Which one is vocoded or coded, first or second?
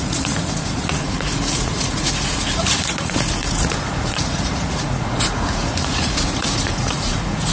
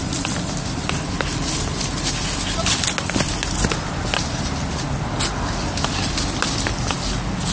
first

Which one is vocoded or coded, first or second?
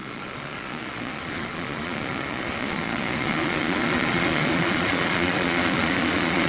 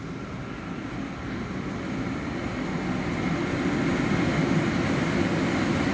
first